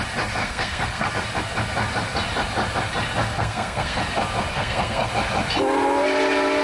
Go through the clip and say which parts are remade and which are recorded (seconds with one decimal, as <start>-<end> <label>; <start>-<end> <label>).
0.0-0.4 recorded; 0.4-1.1 remade; 1.1-3.2 recorded; 3.2-4.0 remade; 4.0-4.5 recorded; 4.5-5.1 remade; 5.1-6.6 recorded